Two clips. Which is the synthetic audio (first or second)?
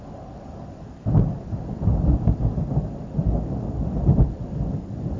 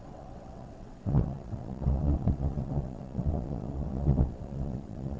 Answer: second